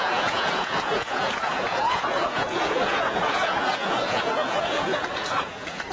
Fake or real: fake